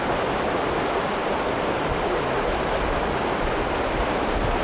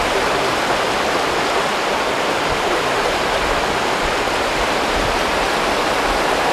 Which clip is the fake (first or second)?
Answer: second